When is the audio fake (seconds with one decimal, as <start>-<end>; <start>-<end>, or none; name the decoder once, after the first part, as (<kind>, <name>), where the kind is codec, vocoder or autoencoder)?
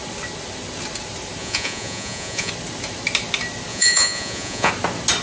1.4-2.5 (vocoder, Vocos); 3.7-4.7